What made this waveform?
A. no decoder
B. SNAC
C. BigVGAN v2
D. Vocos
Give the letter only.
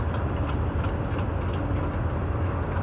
A